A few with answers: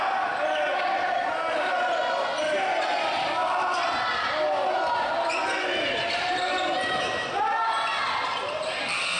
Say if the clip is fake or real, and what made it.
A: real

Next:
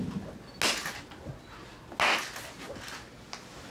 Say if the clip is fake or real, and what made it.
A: real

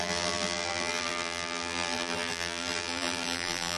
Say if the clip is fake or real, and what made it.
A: fake, vocoder, BigVGAN v2